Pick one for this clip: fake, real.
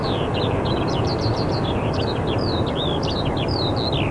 real